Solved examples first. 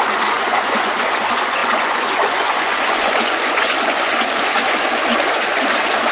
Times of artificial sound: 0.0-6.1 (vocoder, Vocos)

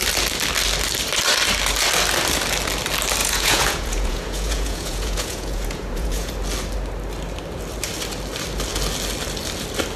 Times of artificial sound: 3.2-6.3 (vocoder, Vocos)

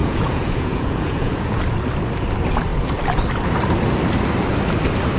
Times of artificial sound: 0.0-1.6 (vocoder, Vocos)

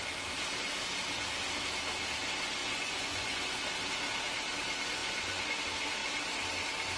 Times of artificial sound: 2.6-3.6 (vocoder, Vocos); 5.0-5.6

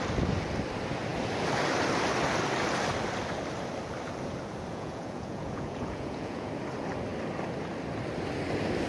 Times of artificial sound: 4.7-6.5 (vocoder, Vocos)

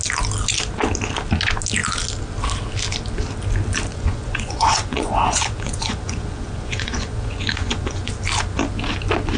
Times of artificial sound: 3.9-8.1 (vocoder, Vocos)